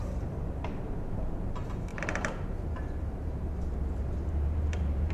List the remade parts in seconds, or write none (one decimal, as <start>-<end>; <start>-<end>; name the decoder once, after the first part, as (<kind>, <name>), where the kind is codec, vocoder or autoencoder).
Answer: 1.9-5.1 (vocoder, BigVGAN v2)